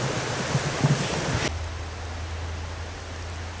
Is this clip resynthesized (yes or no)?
no